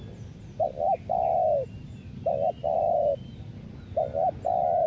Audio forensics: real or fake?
real